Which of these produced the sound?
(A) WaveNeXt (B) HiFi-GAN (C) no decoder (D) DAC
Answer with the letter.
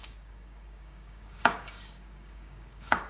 D